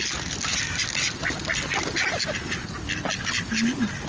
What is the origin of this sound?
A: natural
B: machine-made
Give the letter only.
A